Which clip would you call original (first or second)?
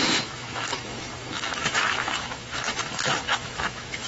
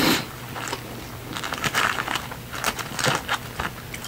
second